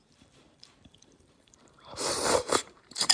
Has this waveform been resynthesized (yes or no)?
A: yes